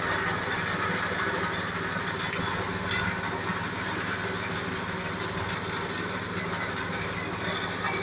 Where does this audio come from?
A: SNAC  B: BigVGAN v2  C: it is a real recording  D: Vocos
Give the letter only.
C